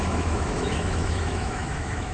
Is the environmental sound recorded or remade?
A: remade